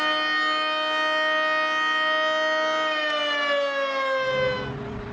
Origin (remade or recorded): recorded